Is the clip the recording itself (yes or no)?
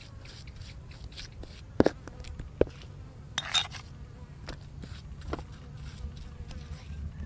yes